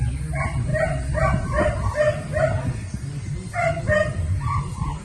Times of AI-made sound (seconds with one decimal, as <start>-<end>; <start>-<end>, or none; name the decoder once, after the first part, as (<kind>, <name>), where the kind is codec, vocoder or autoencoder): none